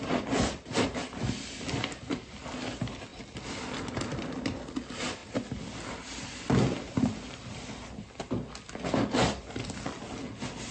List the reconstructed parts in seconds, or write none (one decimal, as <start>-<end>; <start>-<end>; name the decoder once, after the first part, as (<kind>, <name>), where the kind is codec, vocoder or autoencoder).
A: none